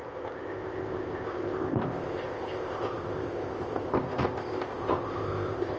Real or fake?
fake